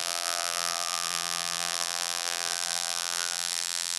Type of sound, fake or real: fake